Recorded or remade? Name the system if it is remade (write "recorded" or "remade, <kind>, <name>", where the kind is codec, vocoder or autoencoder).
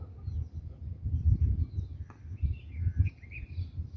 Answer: recorded